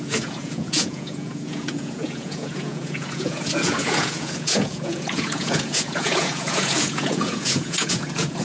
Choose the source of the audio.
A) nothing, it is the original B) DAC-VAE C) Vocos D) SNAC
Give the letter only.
C